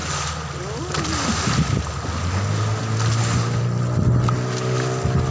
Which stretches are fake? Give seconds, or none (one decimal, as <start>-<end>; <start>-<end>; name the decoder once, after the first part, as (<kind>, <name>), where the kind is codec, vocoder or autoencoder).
none